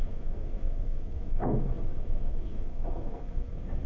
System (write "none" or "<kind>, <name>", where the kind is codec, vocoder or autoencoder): codec, SNAC